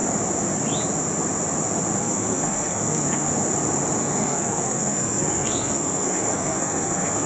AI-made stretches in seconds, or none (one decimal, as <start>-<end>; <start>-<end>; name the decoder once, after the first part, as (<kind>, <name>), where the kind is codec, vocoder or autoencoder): 2.0-3.3 (codec, SNAC); 4.0-7.3